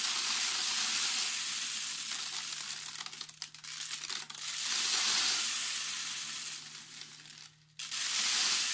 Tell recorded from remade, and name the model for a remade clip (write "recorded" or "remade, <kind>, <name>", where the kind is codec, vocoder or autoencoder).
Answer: recorded